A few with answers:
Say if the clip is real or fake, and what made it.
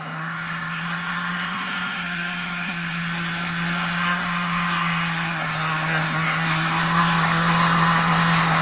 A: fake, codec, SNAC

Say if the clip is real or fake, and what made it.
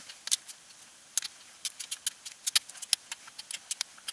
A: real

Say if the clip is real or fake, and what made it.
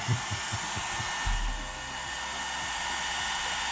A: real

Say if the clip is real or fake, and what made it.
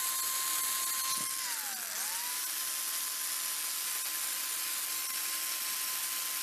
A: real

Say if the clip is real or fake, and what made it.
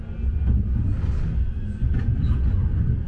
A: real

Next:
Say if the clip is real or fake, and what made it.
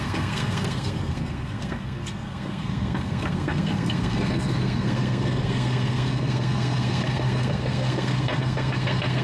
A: fake, codec, SNAC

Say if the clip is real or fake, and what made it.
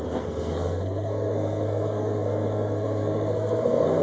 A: fake, codec, SNAC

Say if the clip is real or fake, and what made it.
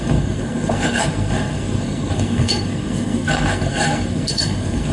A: fake, codec, SNAC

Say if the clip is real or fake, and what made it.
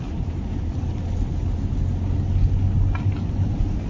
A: real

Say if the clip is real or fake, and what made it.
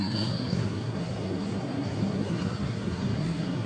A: fake, codec, SNAC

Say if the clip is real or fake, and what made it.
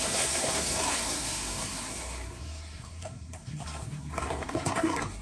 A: fake, codec, SNAC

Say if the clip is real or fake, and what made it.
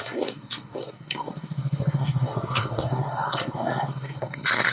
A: fake, codec, SNAC